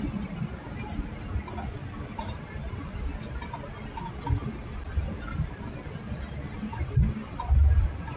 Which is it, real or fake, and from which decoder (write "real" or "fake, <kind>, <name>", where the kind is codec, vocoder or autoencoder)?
real